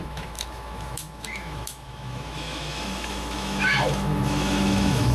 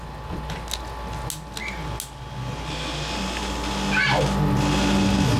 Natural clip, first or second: second